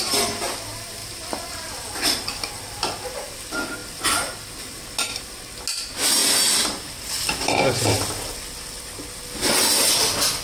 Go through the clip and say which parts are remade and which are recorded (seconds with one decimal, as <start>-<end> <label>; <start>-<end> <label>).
0.0-1.0 recorded; 1.0-2.0 remade; 2.0-6.2 recorded; 6.2-7.0 remade; 7.0-10.4 recorded